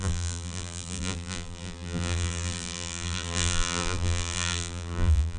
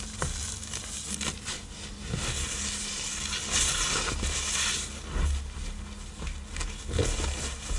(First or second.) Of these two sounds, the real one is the second